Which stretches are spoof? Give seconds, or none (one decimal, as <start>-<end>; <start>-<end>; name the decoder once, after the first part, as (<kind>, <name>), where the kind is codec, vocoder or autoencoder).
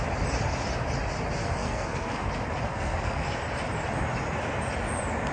1.4-2.3 (codec, SNAC); 2.7-3.3